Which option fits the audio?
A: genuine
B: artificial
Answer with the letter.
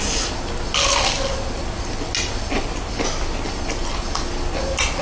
A